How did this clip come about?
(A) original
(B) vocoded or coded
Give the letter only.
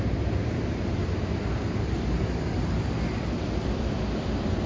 B